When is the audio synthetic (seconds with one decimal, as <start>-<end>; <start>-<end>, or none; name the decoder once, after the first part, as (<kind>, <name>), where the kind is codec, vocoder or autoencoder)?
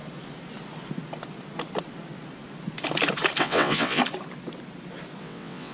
3.4-4.0 (vocoder, WaveNeXt); 5.2-5.7